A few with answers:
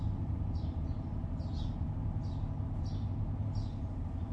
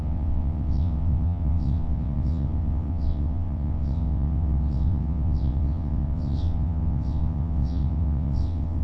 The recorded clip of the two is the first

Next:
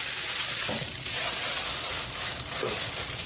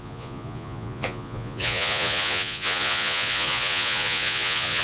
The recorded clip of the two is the first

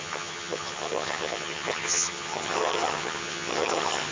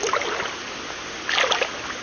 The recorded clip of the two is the second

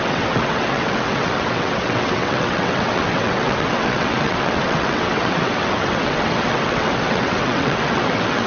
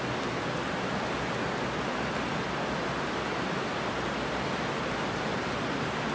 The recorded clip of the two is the second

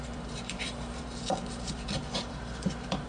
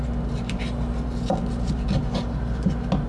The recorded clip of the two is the second